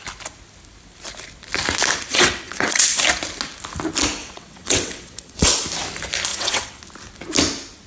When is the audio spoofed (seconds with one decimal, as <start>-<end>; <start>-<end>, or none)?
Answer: 2.1-2.8; 4.2-5.6; 6.3-6.8